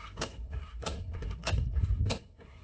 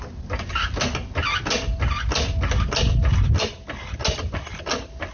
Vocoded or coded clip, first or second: first